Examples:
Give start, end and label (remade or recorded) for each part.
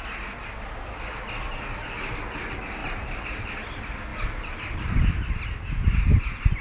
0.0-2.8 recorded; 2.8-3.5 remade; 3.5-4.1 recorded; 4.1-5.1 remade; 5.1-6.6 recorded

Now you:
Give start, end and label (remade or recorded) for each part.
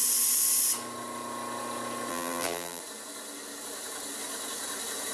0.0-2.1 recorded; 2.1-2.8 remade; 2.8-5.1 recorded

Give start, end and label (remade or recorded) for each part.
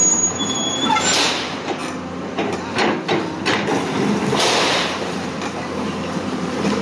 0.0-1.8 remade; 1.8-4.6 recorded; 4.6-6.8 remade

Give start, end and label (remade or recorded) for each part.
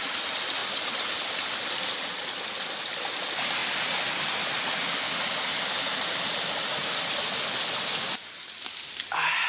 0.0-9.5 recorded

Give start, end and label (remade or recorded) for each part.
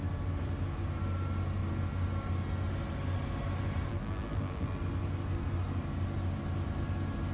0.0-3.9 recorded; 3.9-4.8 remade; 4.8-7.3 recorded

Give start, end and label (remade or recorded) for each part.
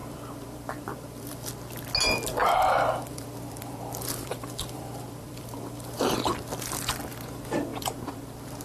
0.0-1.5 remade; 1.5-2.4 recorded; 2.4-7.0 remade; 7.0-7.7 recorded; 7.7-8.6 remade